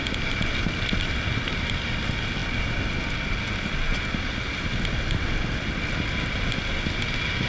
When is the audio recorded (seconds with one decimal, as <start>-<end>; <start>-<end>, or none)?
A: 0.0-7.5